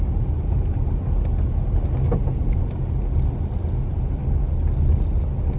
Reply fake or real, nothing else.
real